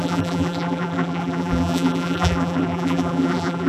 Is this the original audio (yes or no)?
no